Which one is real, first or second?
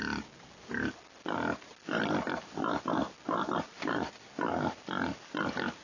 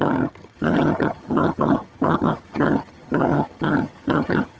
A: first